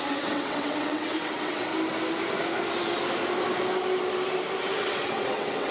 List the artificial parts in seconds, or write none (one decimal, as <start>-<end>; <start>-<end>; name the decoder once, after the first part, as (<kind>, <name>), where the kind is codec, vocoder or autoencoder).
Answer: 0.0-1.7 (vocoder, WaveNeXt); 4.8-5.7